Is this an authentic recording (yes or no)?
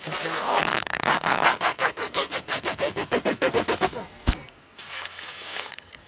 no